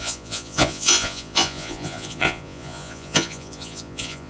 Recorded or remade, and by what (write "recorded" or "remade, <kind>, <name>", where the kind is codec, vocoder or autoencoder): remade, vocoder, Vocos